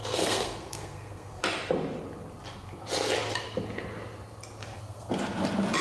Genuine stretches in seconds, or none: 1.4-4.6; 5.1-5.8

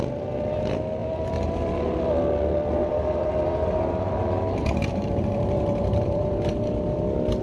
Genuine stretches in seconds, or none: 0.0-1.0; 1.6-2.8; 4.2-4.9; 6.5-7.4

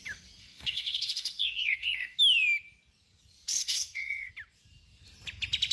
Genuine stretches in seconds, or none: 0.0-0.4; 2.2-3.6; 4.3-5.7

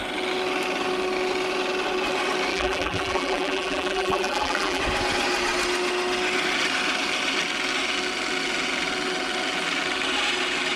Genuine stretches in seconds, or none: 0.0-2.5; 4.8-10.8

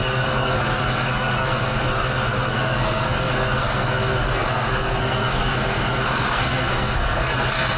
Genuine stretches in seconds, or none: none

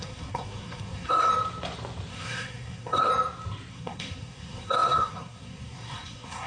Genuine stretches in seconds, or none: 1.3-2.1; 3.1-3.7

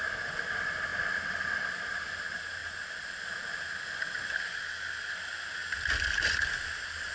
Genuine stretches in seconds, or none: 0.0-7.1